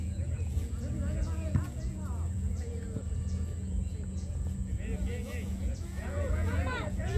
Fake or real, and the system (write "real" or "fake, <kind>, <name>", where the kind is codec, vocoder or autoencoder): fake, vocoder, Vocos